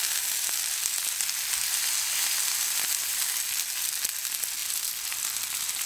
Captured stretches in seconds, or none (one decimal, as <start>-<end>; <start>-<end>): 0.0-5.9